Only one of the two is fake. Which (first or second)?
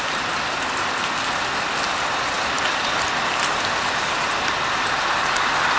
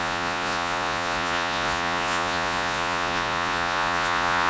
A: second